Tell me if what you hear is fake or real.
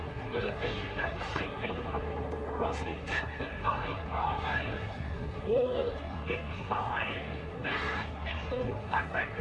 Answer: fake